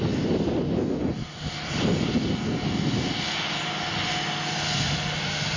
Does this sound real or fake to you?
real